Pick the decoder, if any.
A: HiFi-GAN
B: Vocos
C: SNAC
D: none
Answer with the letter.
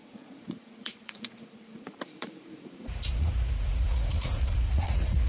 B